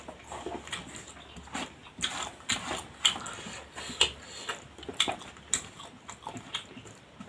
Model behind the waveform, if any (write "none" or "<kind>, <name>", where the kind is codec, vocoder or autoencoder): none